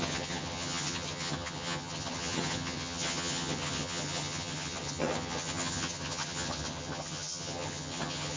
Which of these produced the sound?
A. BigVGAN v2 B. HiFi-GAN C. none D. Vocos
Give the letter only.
B